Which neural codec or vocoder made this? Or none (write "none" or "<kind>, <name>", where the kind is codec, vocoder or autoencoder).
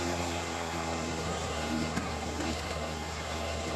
codec, SNAC